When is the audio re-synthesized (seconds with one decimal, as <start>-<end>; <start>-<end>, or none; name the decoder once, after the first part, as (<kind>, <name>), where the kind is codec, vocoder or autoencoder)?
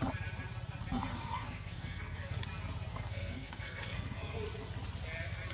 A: 1.1-2.4 (codec, SNAC); 2.9-4.4